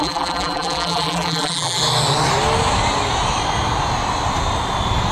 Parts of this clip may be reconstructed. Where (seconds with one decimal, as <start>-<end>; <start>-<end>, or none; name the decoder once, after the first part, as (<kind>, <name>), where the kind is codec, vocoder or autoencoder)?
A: 0.0-1.8 (vocoder, BigVGAN v2)